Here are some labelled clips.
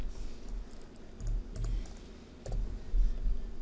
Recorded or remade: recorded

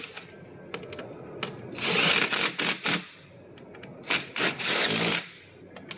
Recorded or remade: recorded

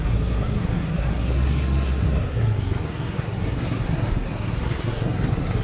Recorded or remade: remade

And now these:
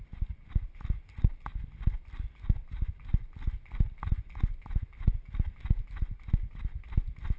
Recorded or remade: recorded